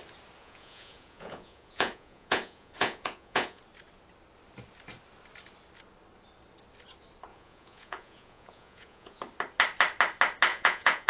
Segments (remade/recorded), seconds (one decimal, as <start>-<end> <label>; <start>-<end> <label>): 0.0-0.4 recorded; 0.4-3.6 remade; 3.6-7.3 recorded; 7.3-9.2 remade; 9.2-10.5 recorded; 10.5-11.1 remade